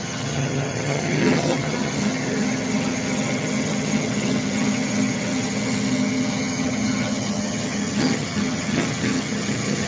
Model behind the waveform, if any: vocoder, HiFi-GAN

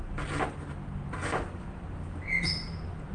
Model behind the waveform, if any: none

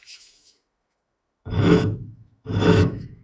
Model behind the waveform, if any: autoencoder, DAC-VAE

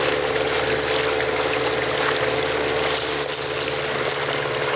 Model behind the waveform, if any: none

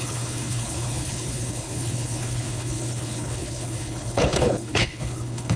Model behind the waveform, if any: codec, HILCodec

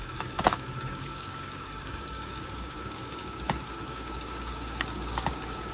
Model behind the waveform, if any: codec, DAC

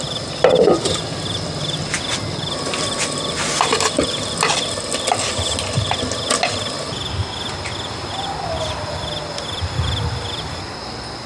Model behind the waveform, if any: none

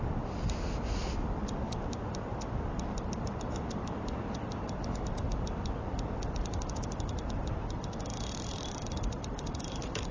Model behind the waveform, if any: none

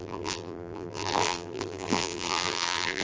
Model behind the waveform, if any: vocoder, BigVGAN v2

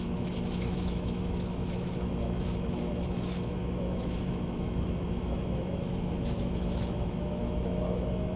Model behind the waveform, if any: autoencoder, DAC-VAE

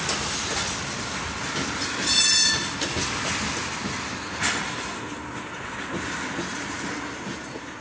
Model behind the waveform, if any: none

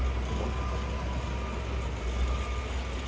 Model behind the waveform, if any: none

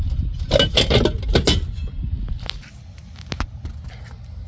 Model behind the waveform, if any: none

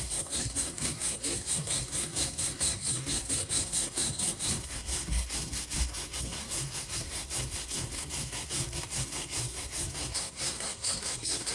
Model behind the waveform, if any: codec, SNAC